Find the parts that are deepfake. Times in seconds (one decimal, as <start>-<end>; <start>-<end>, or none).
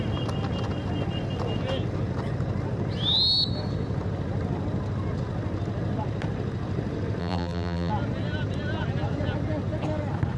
7.2-7.9